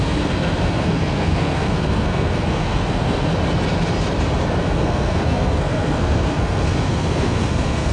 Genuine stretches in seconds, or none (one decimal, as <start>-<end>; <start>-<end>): 3.3-4.6

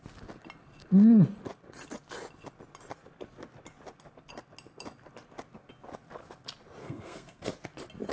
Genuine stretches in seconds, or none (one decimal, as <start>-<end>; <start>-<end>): 0.0-6.8; 7.5-8.1